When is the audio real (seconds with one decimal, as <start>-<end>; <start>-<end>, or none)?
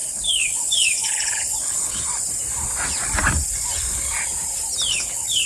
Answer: 2.1-4.9